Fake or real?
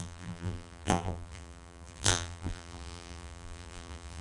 fake